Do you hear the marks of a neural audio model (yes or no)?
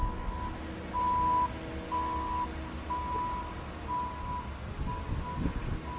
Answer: no